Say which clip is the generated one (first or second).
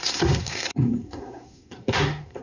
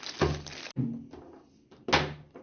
first